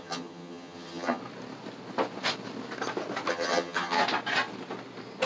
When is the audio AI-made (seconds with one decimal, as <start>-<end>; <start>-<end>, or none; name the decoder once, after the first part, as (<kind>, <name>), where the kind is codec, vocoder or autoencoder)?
0.0-1.2 (vocoder, HiFi-GAN); 3.3-4.0